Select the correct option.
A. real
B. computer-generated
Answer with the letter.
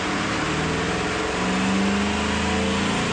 A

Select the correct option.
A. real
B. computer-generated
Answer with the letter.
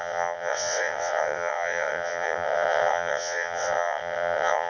B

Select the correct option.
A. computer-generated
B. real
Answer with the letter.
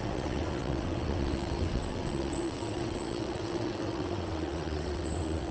A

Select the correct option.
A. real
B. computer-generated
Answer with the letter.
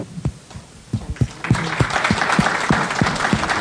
A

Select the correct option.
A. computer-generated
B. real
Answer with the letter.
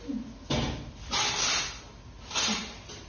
B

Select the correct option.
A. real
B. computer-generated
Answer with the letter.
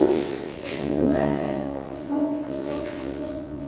B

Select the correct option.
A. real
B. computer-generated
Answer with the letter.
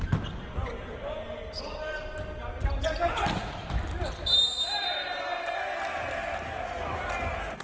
A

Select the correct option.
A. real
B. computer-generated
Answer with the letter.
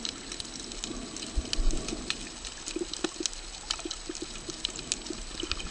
A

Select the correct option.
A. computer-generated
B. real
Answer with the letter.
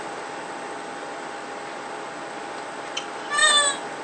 B